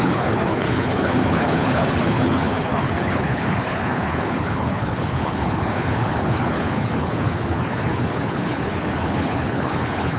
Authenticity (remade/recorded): remade